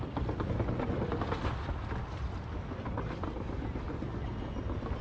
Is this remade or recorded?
recorded